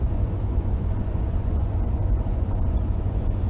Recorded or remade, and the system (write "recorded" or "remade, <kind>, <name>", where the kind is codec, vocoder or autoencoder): remade, vocoder, Vocos